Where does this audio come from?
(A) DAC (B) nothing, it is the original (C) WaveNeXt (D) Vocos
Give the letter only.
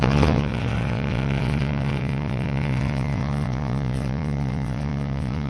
C